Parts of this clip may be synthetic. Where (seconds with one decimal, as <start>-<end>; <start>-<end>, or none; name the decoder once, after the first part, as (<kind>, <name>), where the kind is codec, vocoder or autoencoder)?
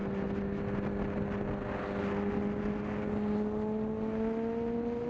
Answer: none